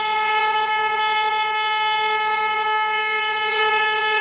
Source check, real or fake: fake